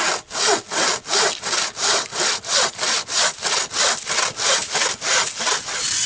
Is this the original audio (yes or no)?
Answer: yes